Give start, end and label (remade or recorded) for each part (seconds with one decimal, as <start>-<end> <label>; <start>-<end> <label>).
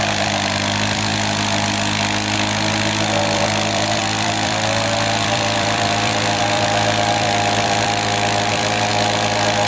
0.0-1.1 remade; 1.1-3.2 recorded; 3.2-8.9 remade; 8.9-9.7 recorded